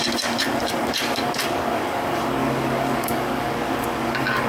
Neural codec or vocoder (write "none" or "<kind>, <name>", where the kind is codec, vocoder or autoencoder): codec, DAC